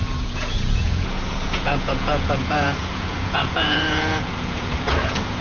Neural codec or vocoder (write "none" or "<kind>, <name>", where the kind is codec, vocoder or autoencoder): vocoder, Vocos